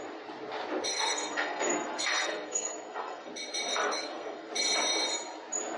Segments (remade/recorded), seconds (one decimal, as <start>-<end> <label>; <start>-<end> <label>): 0.0-0.9 recorded; 0.9-3.3 remade; 3.3-3.7 recorded; 3.7-4.5 remade; 4.5-5.8 recorded